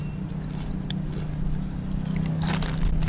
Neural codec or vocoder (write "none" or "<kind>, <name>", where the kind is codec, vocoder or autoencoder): none